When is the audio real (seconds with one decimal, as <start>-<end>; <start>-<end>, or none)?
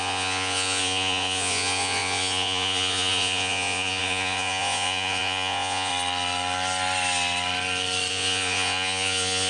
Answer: 5.9-8.1